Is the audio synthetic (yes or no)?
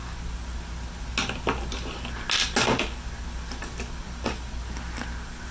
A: no